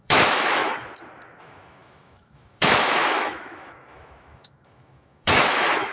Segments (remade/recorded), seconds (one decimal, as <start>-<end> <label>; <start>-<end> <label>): 0.0-0.6 remade; 0.6-1.4 recorded; 1.4-5.9 remade